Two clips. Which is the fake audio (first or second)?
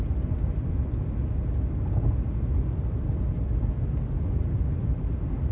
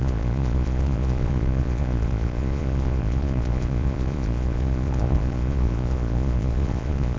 second